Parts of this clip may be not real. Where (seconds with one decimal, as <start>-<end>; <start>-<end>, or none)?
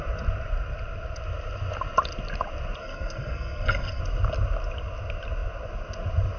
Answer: 2.8-4.0